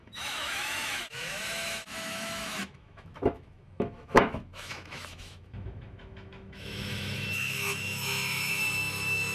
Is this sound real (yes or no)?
no